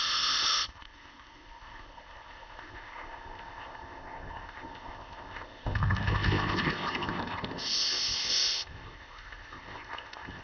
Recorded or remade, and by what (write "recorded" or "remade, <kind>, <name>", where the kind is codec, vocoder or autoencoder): remade, codec, ZipCodec